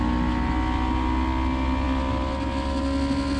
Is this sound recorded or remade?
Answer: recorded